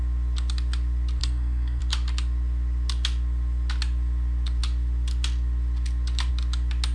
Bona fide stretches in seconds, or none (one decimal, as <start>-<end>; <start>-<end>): 0.0-1.2; 1.8-6.9